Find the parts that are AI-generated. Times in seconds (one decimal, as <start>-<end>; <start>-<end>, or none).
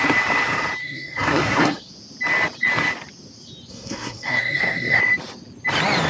0.8-1.9; 3.7-5.0